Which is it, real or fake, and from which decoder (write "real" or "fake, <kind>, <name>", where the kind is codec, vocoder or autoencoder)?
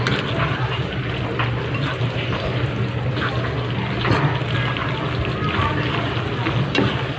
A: real